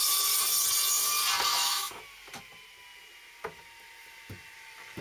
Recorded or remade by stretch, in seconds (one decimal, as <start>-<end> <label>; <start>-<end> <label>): 0.0-1.5 recorded; 1.5-2.0 remade; 2.0-5.0 recorded